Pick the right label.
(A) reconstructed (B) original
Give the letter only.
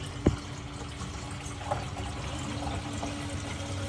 B